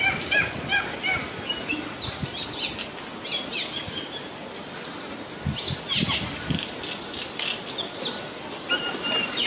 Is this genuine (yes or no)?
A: yes